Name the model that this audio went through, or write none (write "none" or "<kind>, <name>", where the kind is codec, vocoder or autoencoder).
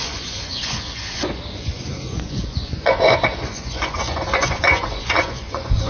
vocoder, Vocos